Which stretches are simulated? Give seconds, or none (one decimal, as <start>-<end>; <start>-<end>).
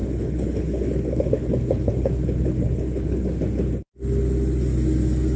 0.0-3.2